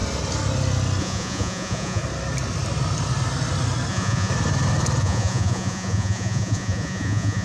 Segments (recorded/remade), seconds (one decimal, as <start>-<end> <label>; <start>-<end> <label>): 0.0-1.0 recorded; 1.0-2.0 remade; 2.0-3.9 recorded; 3.9-4.3 remade; 4.3-5.0 recorded; 5.0-7.4 remade